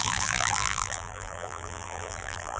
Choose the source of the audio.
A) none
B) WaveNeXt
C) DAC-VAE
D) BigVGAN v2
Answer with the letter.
D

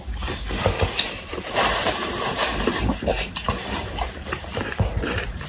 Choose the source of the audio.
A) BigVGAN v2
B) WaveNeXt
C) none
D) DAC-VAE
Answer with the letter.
A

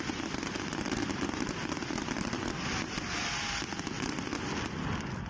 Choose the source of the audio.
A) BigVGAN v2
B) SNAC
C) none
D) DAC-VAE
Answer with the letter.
C